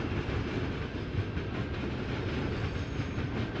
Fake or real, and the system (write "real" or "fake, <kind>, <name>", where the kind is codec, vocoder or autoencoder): real